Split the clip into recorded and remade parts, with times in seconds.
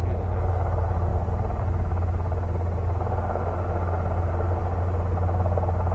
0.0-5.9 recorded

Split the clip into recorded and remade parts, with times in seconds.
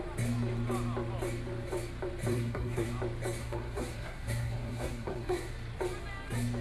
0.0-2.3 recorded; 2.3-2.9 remade; 2.9-3.4 recorded; 3.4-5.5 remade; 5.5-6.6 recorded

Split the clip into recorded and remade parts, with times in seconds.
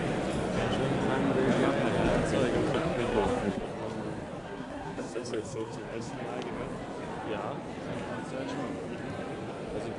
0.0-2.7 recorded; 2.7-3.6 remade; 3.6-4.4 recorded; 4.4-6.2 remade; 6.2-10.0 recorded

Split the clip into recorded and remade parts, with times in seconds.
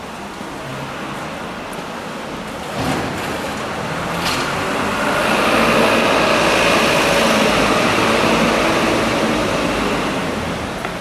0.0-11.0 recorded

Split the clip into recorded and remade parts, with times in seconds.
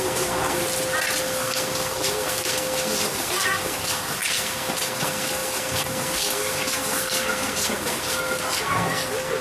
0.0-0.6 remade; 0.6-1.2 recorded; 1.2-9.4 remade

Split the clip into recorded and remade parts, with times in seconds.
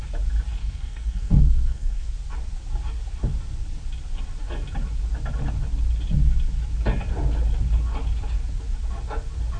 0.0-0.6 recorded; 0.6-2.1 remade; 2.1-9.6 recorded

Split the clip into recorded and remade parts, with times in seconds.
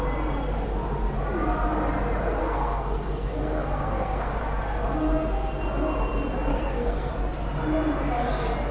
0.0-2.4 recorded; 2.4-4.4 remade; 4.4-6.5 recorded; 6.5-7.1 remade; 7.1-8.7 recorded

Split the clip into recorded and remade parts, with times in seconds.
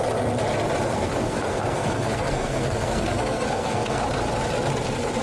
0.0-0.9 recorded; 0.9-4.0 remade; 4.0-5.2 recorded